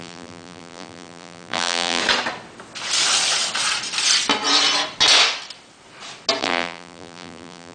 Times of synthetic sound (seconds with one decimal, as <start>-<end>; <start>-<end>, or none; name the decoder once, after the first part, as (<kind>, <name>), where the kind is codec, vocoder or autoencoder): 0.0-2.0 (vocoder, BigVGAN v2); 6.4-7.7